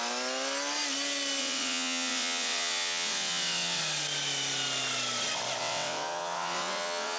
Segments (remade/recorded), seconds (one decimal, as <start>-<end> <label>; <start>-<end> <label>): 0.0-1.4 recorded; 1.4-3.8 remade; 3.8-5.6 recorded; 5.6-7.2 remade